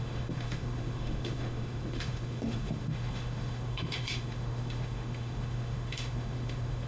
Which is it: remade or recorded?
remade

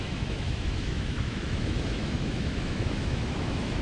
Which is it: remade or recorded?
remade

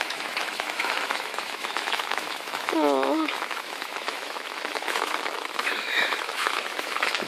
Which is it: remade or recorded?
remade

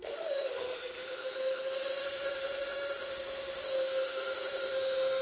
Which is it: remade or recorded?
remade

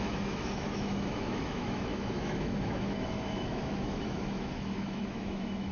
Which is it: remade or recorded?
remade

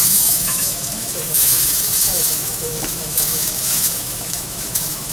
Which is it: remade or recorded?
remade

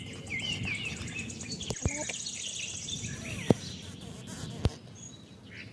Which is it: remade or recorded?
recorded